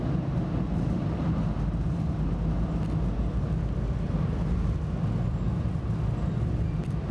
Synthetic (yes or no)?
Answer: no